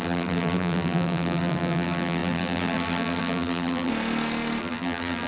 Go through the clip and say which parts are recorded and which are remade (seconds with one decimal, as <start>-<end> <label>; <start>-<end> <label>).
0.0-3.9 remade; 3.9-4.6 recorded; 4.6-5.3 remade